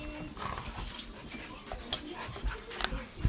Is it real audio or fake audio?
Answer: real